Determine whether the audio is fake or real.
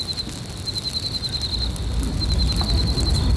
real